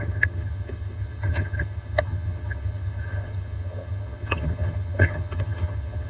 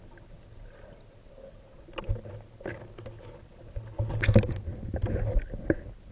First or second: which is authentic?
second